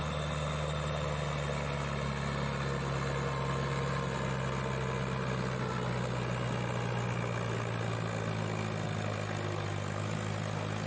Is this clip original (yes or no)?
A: yes